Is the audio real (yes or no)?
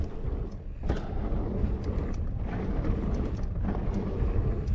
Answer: yes